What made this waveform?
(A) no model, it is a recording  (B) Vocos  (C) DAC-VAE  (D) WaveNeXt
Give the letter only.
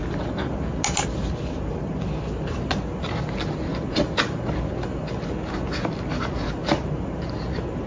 A